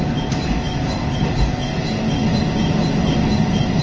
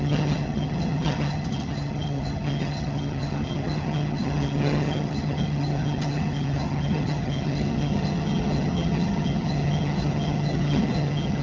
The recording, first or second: first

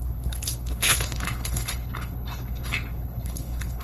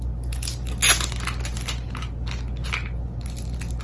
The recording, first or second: second